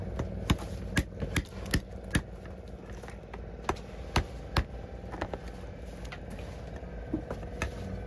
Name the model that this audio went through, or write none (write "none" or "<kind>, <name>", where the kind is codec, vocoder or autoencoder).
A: none